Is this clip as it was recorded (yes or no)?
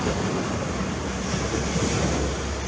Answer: yes